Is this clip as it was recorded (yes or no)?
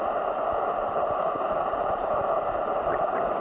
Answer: yes